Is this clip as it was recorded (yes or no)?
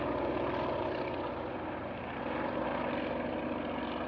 yes